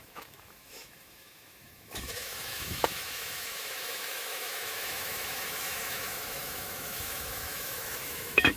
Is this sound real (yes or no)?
no